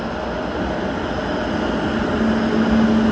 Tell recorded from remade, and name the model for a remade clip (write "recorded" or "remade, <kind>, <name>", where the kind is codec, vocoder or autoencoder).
recorded